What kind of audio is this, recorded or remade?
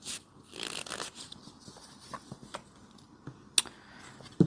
recorded